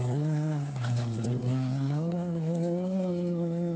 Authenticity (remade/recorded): remade